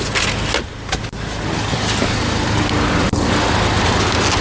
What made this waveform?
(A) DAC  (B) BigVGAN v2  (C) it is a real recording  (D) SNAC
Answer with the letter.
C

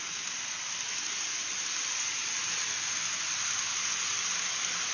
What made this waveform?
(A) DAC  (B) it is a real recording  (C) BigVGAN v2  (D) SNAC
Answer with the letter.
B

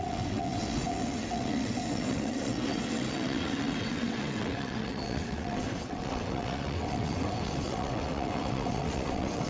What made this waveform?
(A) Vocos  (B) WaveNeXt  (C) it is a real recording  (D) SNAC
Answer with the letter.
B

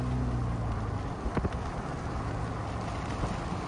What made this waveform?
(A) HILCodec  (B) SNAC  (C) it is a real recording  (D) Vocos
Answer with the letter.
C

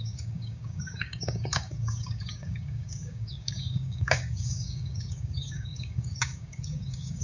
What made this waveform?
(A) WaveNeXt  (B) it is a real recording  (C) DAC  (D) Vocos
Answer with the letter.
C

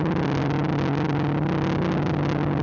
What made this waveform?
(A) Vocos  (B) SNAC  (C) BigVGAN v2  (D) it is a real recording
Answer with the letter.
D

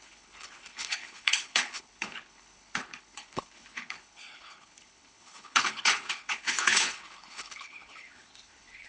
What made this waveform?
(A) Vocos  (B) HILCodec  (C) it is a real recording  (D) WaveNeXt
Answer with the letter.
B